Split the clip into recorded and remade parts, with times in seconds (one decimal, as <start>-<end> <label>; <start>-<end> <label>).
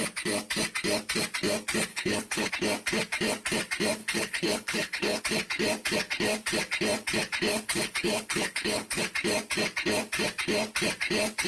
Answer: 0.0-1.9 recorded; 1.9-2.5 remade; 2.5-4.0 recorded; 4.0-5.2 remade; 5.2-7.5 recorded; 7.5-9.0 remade; 9.0-11.5 recorded